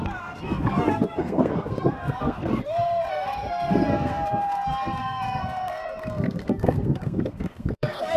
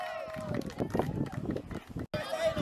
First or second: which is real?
second